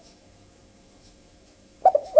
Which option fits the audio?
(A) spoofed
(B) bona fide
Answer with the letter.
A